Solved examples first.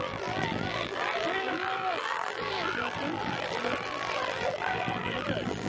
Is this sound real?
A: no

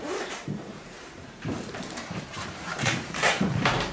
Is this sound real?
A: no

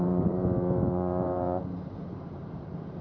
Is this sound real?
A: no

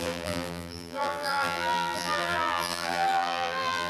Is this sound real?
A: no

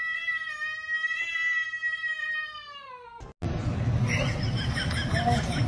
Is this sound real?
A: yes